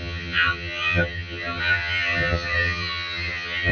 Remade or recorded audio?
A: remade